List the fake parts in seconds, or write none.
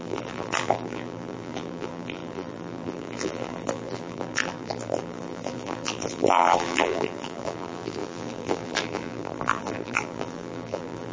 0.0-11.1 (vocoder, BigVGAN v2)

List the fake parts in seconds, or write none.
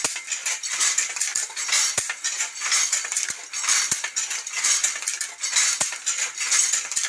0.0-7.1 (vocoder, BigVGAN v2)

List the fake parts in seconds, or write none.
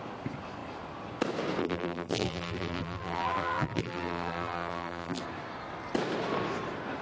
1.6-5.2 (vocoder, BigVGAN v2)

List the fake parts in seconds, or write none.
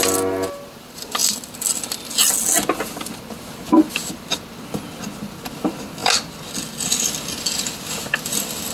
none